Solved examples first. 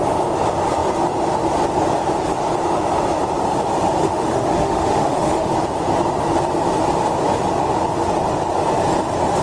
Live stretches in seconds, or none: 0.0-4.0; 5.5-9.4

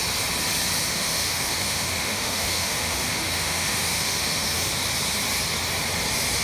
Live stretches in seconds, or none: 0.0-0.9; 4.7-6.4

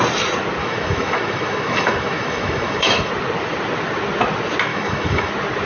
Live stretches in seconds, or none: 0.0-0.6; 3.1-4.7; 5.3-5.7

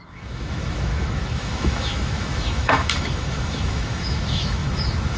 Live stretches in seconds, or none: none